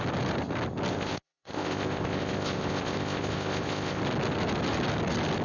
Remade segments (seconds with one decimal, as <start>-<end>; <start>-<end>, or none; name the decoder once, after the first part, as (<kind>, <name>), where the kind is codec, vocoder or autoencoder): 0.9-4.0 (codec, ZipCodec)